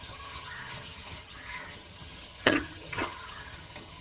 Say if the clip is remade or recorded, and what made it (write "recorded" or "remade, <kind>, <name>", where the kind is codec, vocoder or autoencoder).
remade, vocoder, HiFi-GAN